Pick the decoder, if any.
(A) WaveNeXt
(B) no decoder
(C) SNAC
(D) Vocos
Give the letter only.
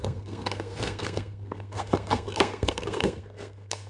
C